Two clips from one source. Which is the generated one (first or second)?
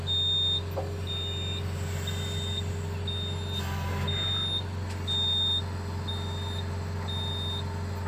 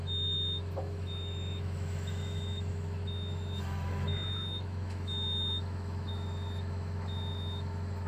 second